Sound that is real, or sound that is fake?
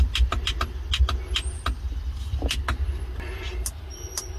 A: real